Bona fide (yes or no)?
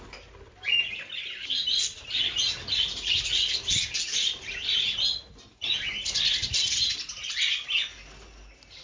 yes